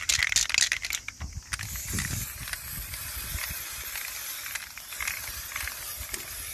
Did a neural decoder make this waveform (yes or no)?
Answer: no